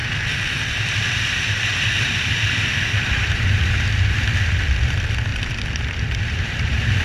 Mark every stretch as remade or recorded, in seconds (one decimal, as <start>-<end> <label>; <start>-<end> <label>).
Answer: 0.0-4.2 remade; 4.2-5.3 recorded; 5.3-7.0 remade